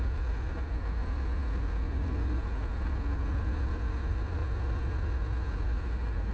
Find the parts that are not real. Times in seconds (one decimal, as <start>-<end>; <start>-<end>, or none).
0.0-4.4